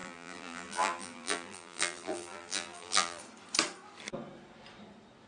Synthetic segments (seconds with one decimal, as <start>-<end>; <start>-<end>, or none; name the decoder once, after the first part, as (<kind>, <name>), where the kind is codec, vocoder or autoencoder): 0.0-3.2 (vocoder, BigVGAN v2)